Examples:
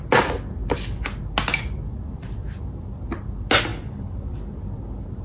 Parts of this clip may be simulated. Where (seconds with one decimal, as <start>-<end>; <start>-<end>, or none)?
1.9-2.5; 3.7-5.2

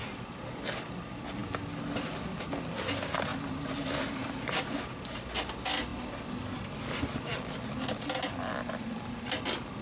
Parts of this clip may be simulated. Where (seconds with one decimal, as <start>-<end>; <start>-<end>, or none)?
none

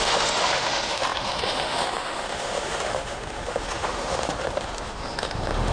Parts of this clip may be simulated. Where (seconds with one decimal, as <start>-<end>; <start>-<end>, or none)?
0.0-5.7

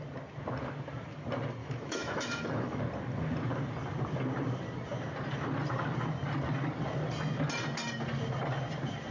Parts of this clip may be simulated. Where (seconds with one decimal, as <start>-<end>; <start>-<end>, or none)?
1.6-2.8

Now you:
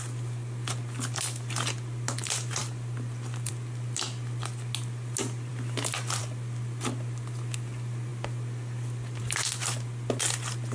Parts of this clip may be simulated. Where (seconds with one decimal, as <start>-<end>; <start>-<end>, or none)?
none

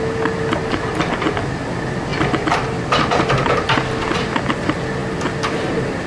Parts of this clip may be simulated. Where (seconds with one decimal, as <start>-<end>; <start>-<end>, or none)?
none

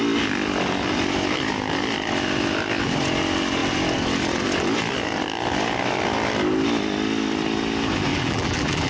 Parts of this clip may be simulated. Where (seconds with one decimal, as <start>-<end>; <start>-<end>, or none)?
8.1-8.9